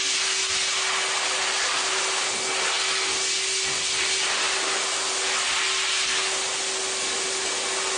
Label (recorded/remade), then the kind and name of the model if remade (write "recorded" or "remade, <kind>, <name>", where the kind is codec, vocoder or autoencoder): recorded